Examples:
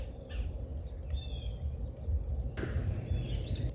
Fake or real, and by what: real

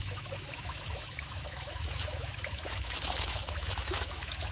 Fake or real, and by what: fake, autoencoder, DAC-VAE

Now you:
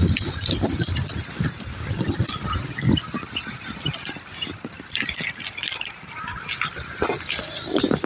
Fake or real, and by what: real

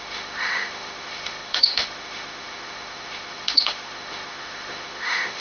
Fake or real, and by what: fake, autoencoder, DAC-VAE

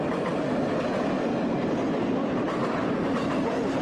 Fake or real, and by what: real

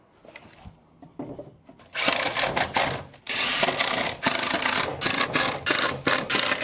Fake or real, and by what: real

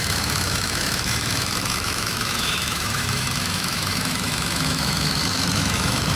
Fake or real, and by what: fake, autoencoder, DAC-VAE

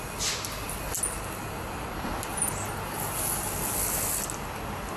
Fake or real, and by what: real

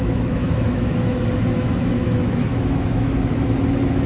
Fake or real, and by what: fake, autoencoder, DAC-VAE